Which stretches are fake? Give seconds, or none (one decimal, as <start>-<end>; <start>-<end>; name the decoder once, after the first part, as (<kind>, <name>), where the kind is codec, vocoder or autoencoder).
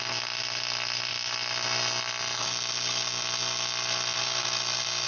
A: none